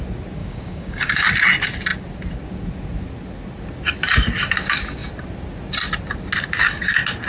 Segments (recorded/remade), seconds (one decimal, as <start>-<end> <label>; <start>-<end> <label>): 0.0-0.4 recorded; 0.4-1.3 remade; 1.3-7.3 recorded

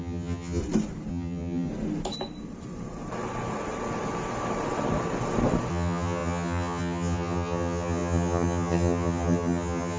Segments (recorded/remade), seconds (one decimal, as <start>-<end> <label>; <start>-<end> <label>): 0.0-0.6 remade; 0.6-1.1 recorded; 1.1-1.7 remade; 1.7-5.7 recorded; 5.7-10.0 remade

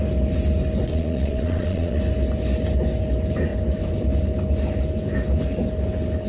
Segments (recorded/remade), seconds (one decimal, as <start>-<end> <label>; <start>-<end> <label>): 0.0-0.9 recorded; 0.9-2.0 remade; 2.0-6.3 recorded

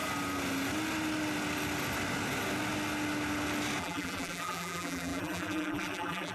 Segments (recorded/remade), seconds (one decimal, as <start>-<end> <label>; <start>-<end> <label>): 0.0-3.8 recorded; 3.8-6.3 remade